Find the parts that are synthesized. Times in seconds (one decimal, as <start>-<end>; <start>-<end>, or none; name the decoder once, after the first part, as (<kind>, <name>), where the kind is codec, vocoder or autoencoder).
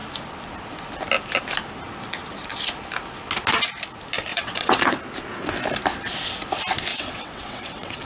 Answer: 4.3-5.0 (vocoder, WaveNeXt); 6.9-8.0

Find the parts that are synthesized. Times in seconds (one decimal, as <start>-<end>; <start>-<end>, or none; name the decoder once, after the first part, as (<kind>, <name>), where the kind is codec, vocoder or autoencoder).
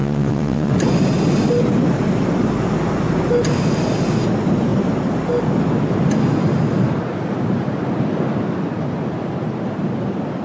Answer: 0.0-0.7 (vocoder, WaveNeXt)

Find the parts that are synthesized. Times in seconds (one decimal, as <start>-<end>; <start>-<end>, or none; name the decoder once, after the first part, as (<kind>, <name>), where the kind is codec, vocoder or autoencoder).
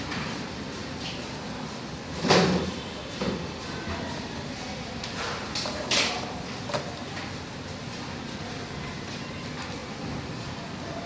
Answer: none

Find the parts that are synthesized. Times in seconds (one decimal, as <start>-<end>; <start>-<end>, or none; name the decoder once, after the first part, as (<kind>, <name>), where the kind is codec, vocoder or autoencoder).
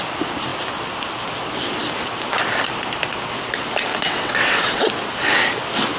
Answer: 3.9-4.9 (vocoder, WaveNeXt)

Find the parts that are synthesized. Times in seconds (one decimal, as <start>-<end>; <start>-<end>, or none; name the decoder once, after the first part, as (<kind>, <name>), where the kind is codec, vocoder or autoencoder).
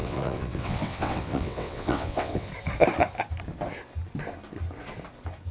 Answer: 0.0-2.5 (vocoder, WaveNeXt)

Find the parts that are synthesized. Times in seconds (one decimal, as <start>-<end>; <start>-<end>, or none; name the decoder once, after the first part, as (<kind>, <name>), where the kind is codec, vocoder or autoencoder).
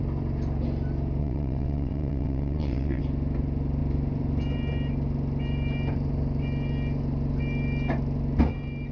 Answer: 1.2-3.0 (vocoder, WaveNeXt)